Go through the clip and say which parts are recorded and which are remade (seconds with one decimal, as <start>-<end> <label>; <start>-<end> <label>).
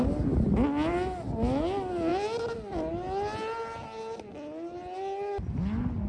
0.0-6.1 recorded